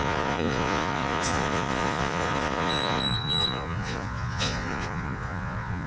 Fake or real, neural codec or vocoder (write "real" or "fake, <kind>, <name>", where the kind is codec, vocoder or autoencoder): fake, vocoder, Vocos